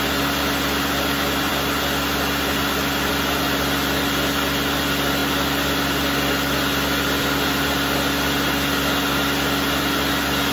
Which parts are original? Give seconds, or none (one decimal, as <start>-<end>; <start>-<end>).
0.0-10.5